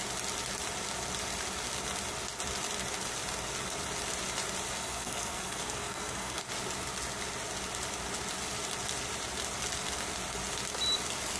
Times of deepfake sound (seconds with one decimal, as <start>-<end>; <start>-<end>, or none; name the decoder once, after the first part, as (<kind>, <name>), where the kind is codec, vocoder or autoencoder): 4.8-6.4 (codec, SNAC)